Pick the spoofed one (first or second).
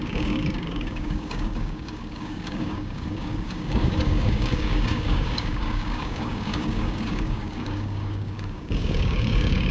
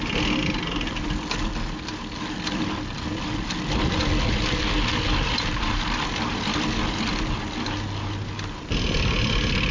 first